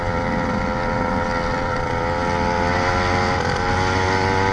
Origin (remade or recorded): recorded